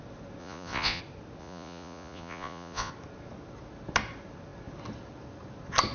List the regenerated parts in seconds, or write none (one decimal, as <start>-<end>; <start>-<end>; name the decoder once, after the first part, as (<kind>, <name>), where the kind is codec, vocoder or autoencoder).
0.4-1.0 (vocoder, Vocos); 1.4-2.9